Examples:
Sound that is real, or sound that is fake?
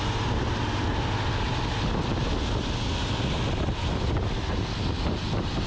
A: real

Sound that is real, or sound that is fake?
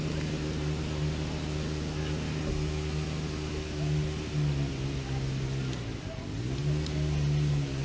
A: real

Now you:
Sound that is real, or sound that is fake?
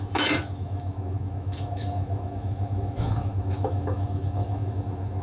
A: fake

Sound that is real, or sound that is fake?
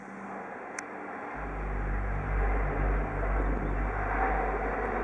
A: real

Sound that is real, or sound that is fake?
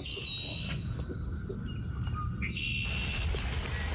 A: real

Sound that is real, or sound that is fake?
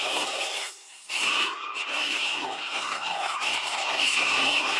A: fake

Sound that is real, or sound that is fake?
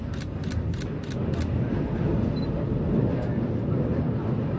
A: real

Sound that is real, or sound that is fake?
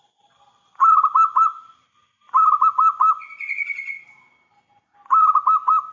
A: real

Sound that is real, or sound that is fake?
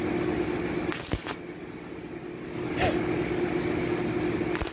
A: real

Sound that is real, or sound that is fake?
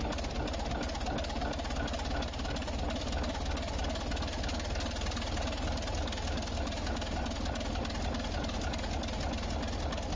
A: real